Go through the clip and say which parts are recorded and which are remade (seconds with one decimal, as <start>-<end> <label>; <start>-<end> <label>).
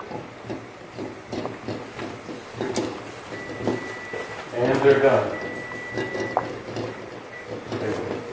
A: 0.0-8.3 recorded